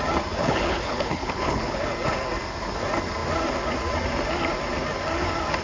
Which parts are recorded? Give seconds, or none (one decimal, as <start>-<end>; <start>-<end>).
0.0-0.4; 1.8-5.6